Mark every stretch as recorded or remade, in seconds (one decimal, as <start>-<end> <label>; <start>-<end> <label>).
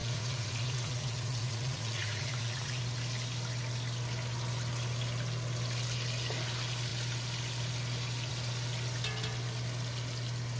0.0-2.8 remade; 2.8-10.6 recorded